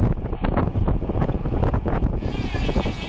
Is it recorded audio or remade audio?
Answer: remade